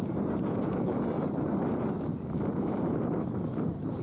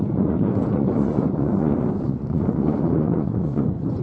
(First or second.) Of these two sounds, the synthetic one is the second